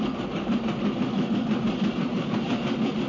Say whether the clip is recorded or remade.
recorded